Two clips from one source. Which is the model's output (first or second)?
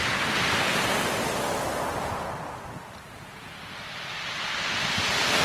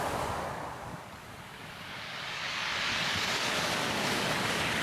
second